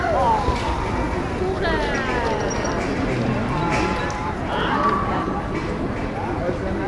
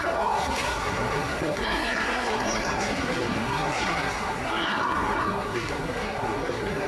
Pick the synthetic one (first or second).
second